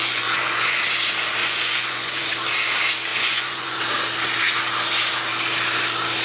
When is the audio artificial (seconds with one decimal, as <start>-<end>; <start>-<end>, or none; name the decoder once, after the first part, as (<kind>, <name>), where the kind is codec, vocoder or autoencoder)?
0.0-0.8 (vocoder, Vocos); 1.4-2.3; 3.1-3.8